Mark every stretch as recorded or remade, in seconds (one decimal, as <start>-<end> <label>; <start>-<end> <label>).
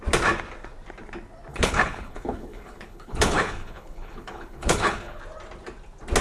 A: 0.0-1.5 recorded; 1.5-5.2 remade; 5.2-6.2 recorded